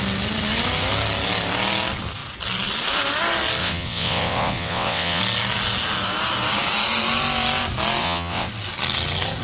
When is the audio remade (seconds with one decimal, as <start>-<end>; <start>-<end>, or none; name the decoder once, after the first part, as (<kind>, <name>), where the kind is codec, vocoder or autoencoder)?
3.6-5.2 (vocoder, WaveNeXt); 8.0-8.5